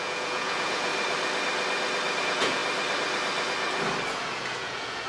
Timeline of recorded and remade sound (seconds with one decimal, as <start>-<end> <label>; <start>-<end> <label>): 0.0-0.9 remade; 0.9-2.2 recorded; 2.2-2.6 remade; 2.6-4.1 recorded; 4.1-5.1 remade